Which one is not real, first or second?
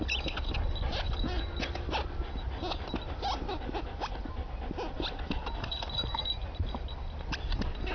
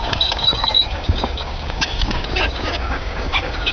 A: second